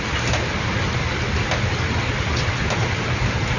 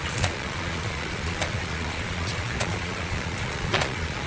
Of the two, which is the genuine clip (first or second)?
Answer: first